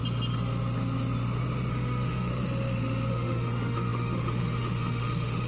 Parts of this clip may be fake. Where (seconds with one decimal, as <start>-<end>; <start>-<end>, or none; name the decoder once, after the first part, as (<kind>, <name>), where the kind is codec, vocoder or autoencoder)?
1.7-2.3 (autoencoder, DAC-VAE); 3.1-5.5